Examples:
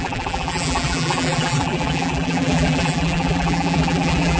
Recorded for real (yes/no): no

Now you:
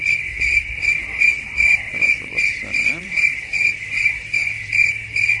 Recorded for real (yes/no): no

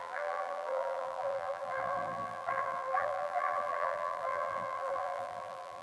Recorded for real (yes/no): no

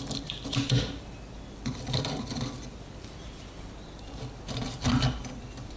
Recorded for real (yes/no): no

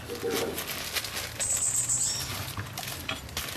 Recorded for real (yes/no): yes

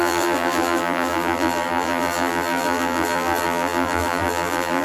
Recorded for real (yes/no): no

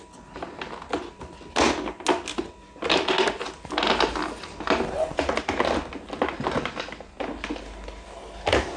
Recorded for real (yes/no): yes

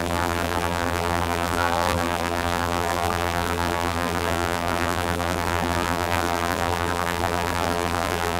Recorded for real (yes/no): no